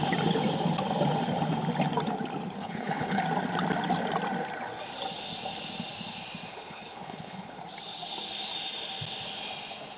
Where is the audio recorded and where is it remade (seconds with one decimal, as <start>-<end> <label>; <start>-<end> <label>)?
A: 0.0-2.6 recorded; 2.6-3.2 remade; 3.2-6.5 recorded; 6.5-7.6 remade; 7.6-10.0 recorded